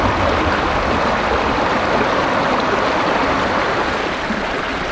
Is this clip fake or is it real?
real